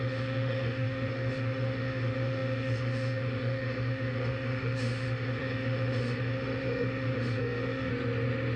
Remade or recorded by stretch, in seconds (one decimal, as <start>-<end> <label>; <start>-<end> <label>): 0.0-7.9 remade; 7.9-8.6 recorded